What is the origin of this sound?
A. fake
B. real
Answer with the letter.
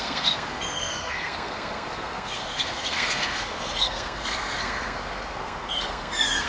A